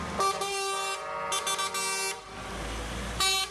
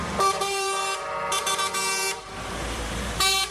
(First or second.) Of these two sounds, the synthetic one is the second